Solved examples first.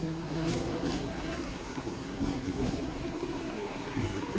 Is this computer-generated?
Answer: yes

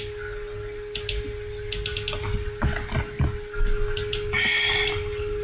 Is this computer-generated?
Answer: no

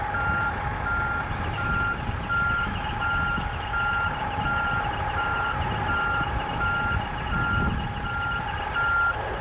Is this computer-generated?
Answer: no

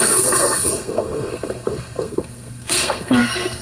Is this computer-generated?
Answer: yes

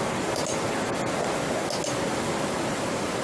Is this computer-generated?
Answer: no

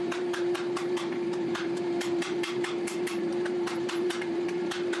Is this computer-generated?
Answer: yes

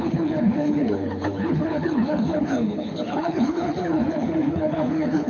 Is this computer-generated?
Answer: yes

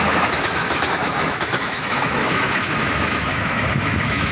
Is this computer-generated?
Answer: yes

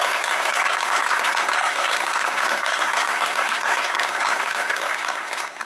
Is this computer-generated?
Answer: yes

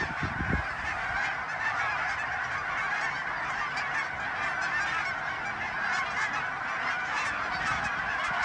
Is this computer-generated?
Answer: no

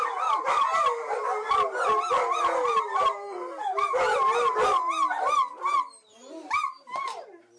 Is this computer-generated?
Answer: no